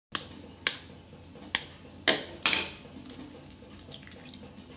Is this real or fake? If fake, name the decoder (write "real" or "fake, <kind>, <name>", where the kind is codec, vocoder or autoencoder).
real